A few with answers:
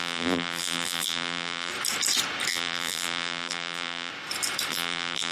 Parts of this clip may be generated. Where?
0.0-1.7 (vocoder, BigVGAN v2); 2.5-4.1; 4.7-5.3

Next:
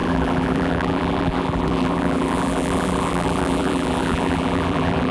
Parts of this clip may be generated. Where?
0.0-5.1 (vocoder, BigVGAN v2)

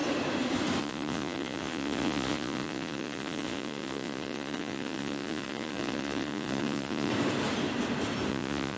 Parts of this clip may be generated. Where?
0.8-7.1 (vocoder, Vocos); 8.3-8.8

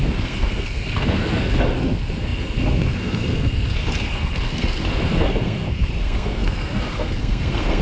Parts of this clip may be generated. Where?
0.0-7.8 (codec, SNAC)

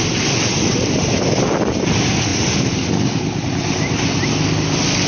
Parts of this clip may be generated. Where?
none

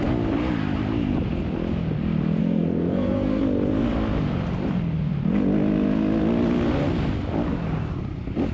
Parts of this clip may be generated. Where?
2.4-3.4 (codec, SNAC)

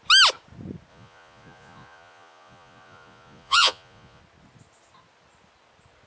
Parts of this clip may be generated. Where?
0.9-4.2 (vocoder, Vocos)